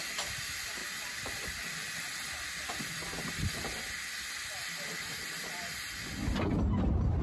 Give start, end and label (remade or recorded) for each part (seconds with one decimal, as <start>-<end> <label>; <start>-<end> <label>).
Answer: 0.0-7.2 recorded